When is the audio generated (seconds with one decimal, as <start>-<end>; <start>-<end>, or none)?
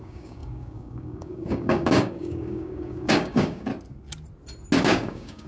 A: 0.0-3.7; 4.8-5.5